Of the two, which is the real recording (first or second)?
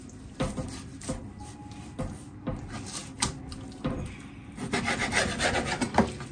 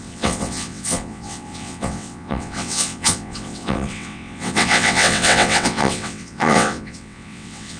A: first